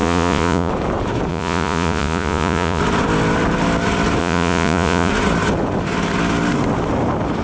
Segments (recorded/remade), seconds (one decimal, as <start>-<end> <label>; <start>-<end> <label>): 0.0-0.7 remade; 0.7-1.3 recorded; 1.3-2.8 remade; 2.8-4.2 recorded; 4.2-5.1 remade; 5.1-7.4 recorded